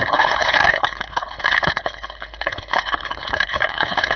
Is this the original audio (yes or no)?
no